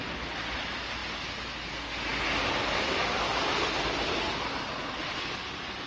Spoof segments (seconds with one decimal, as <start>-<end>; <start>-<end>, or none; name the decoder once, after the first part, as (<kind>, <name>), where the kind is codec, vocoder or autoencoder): none